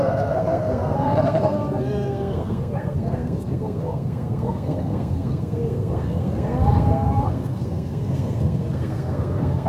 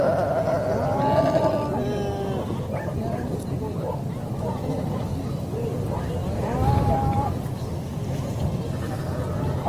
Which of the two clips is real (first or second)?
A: second